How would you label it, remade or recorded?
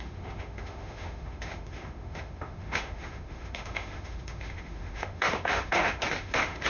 remade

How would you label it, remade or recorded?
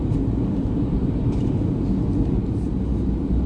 remade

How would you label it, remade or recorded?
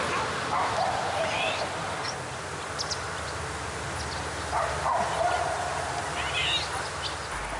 recorded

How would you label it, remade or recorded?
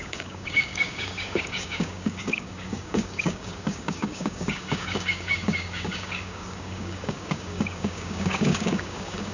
remade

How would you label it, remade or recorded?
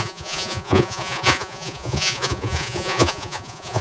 remade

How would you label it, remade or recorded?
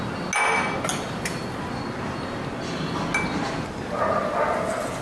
recorded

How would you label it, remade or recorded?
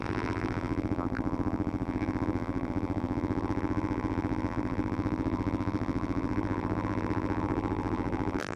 remade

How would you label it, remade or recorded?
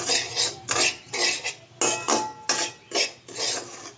recorded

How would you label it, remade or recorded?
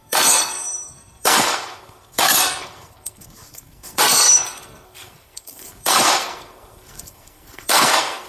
remade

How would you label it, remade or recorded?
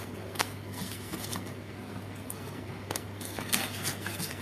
remade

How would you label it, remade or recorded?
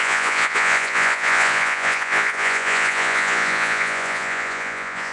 remade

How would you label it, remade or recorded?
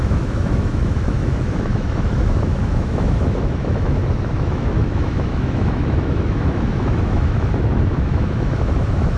remade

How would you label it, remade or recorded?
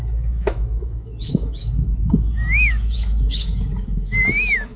remade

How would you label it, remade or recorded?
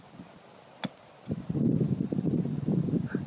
recorded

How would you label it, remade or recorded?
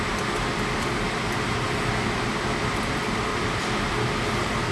remade